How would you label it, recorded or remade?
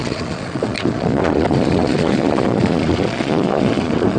remade